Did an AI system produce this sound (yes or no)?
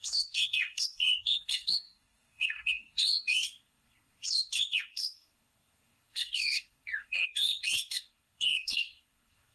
yes